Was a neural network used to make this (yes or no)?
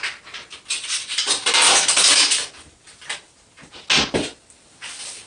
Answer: no